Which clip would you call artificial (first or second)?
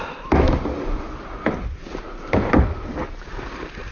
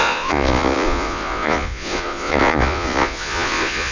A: second